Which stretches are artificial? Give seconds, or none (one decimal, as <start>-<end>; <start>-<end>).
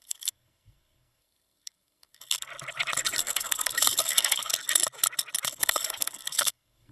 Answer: 0.0-2.5; 3.2-4.5; 5.5-6.9